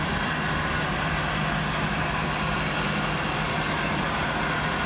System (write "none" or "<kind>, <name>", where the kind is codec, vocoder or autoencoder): none